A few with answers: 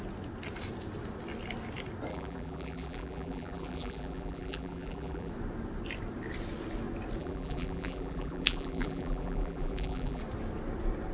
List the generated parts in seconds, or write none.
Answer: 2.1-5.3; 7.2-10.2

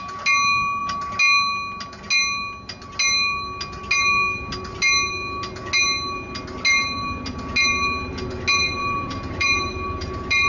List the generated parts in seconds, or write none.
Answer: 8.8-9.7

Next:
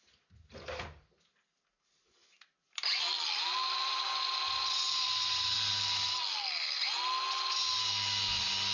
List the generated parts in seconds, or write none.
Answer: 3.8-5.7

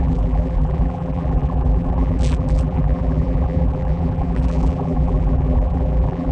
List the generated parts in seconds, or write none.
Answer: 0.0-6.3